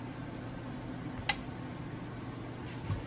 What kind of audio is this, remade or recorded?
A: recorded